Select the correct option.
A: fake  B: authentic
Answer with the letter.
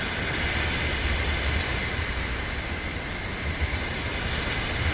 A